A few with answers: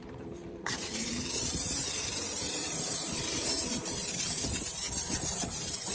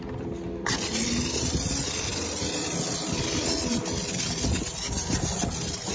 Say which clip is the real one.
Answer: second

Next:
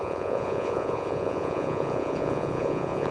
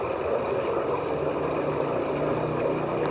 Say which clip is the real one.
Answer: second